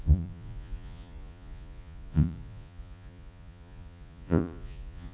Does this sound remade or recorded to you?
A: remade